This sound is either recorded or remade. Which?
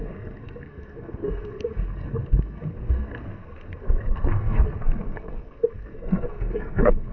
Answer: remade